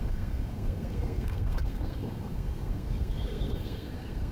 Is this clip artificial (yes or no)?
yes